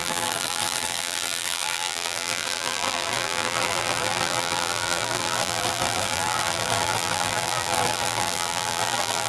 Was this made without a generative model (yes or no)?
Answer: no